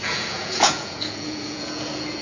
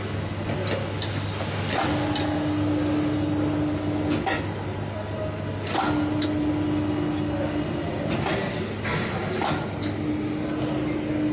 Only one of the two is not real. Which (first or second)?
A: first